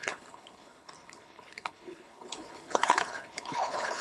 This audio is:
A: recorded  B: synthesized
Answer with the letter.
B